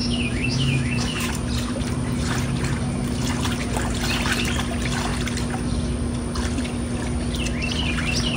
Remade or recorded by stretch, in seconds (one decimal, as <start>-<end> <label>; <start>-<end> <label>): 0.0-1.3 remade; 1.3-8.4 recorded